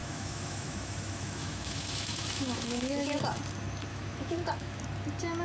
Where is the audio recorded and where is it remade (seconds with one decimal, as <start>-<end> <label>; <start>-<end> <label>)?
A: 0.0-3.2 remade; 3.2-3.9 recorded; 3.9-4.8 remade; 4.8-5.4 recorded